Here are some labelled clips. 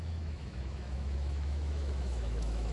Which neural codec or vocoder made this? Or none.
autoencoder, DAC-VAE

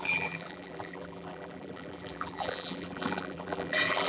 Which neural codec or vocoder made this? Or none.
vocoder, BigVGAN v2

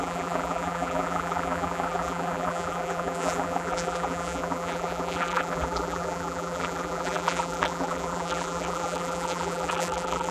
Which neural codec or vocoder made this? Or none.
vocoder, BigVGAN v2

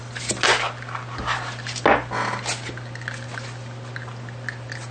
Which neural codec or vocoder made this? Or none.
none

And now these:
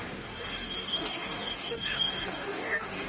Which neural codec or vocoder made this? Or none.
codec, DAC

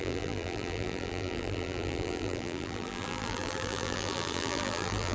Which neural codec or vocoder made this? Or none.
vocoder, BigVGAN v2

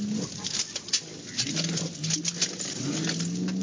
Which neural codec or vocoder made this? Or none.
none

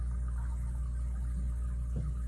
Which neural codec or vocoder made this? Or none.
none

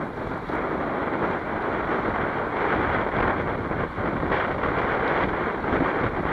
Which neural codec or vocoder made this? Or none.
none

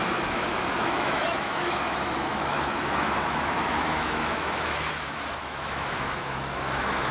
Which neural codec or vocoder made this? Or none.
autoencoder, DAC-VAE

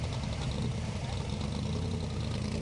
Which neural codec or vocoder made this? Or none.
none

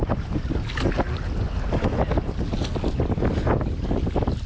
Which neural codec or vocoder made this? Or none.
none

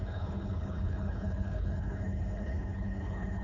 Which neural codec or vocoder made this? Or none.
codec, HILCodec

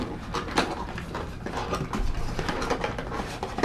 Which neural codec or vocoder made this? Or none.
none